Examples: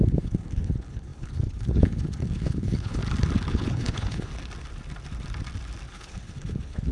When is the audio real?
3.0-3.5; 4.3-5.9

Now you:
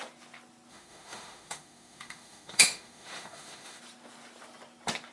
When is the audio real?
0.0-0.7; 3.8-5.1

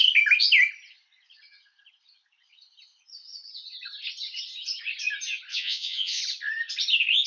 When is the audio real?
0.0-5.5; 6.2-7.3

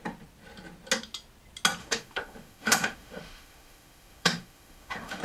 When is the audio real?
0.0-1.8

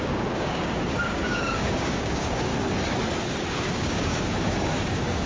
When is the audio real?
2.5-3.5

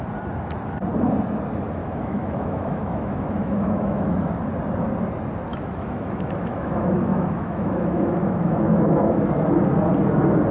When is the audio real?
0.0-1.8; 4.3-5.5; 9.2-10.5

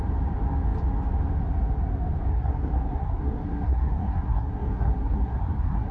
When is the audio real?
0.0-2.3

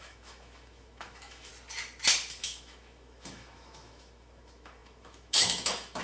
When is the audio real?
1.5-2.4